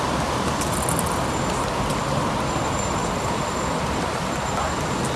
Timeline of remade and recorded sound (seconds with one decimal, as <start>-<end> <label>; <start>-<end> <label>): 0.0-3.0 recorded; 3.0-4.6 remade; 4.6-5.2 recorded